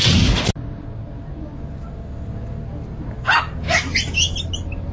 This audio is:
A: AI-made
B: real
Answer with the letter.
B